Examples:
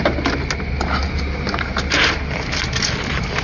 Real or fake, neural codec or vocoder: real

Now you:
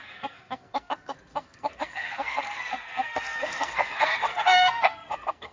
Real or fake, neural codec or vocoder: fake, codec, SNAC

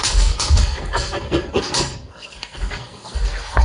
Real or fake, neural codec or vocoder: fake, codec, SNAC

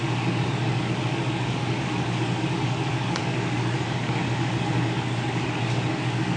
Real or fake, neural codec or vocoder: fake, codec, DAC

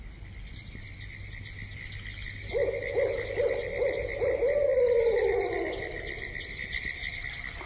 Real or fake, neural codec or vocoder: real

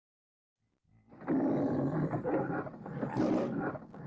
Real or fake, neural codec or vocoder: real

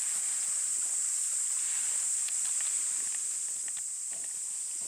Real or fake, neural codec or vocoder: real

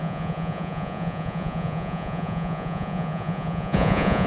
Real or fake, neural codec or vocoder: fake, vocoder, Vocos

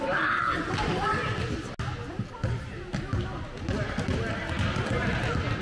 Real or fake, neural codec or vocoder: real